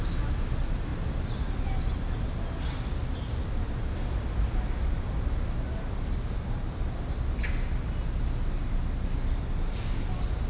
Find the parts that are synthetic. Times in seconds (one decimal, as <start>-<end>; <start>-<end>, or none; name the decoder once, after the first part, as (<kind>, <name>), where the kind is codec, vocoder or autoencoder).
none